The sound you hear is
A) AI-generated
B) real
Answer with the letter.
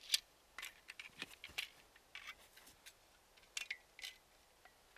B